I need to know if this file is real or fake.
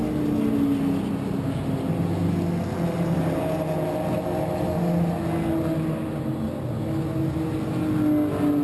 real